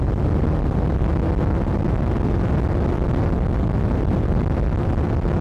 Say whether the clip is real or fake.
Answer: real